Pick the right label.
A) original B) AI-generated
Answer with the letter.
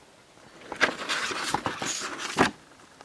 A